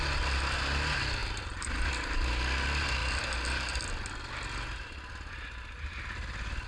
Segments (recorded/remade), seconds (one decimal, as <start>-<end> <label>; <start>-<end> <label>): 0.0-1.2 recorded; 1.2-1.9 remade; 1.9-3.0 recorded; 3.0-4.1 remade; 4.1-6.7 recorded